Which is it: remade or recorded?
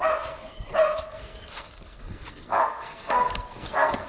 remade